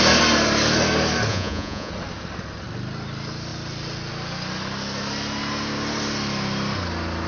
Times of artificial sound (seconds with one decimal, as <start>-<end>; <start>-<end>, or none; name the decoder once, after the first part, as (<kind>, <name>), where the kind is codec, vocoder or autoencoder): 1.3-1.9 (vocoder, Vocos)